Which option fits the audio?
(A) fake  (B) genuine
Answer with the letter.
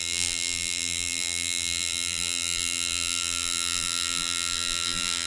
A